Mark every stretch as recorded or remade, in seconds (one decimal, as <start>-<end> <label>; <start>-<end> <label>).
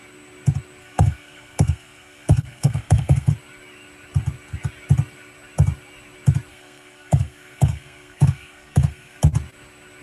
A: 0.0-0.8 recorded; 0.8-3.3 remade; 3.3-6.5 recorded; 6.5-9.2 remade; 9.2-10.0 recorded